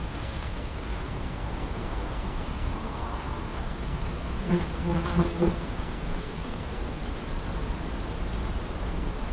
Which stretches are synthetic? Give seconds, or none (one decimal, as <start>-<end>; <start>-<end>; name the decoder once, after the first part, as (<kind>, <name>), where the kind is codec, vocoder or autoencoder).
0.0-7.0 (codec, SNAC); 8.8-9.3

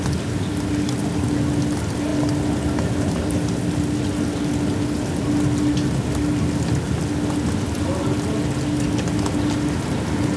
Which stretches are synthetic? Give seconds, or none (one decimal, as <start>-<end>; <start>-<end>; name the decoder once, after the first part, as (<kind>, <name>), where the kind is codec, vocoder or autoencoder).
none

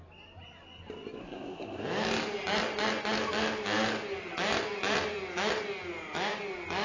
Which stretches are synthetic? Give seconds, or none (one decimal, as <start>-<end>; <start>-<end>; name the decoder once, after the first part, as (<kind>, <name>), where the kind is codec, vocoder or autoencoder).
1.2-1.8 (codec, SNAC)

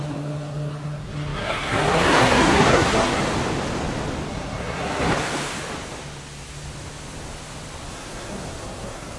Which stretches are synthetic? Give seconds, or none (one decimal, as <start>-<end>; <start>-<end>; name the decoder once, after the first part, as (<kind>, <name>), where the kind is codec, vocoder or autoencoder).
0.0-3.2 (codec, SNAC); 4.3-5.1; 7.9-9.2

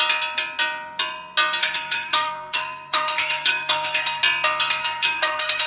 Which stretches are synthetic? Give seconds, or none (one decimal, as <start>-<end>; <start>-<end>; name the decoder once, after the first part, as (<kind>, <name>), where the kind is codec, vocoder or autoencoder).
1.6-4.2 (codec, SNAC); 4.8-5.7

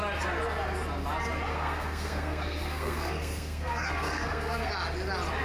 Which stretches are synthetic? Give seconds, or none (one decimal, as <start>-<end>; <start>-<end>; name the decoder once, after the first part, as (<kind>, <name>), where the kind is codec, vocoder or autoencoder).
1.5-4.7 (codec, SNAC)